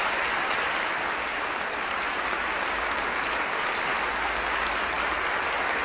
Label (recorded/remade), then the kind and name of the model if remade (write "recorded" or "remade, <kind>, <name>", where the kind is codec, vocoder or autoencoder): recorded